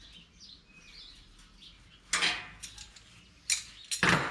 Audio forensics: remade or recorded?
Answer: recorded